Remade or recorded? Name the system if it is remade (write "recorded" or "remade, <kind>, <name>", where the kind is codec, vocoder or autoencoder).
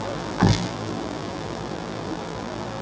remade, vocoder, BigVGAN v2